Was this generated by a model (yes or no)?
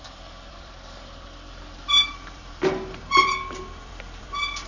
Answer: yes